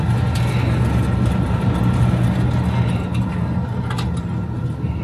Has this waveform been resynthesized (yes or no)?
no